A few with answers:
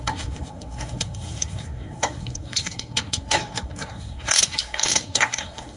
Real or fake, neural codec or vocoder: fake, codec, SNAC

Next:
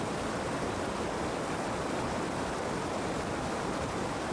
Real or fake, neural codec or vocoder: real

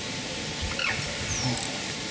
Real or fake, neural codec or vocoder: real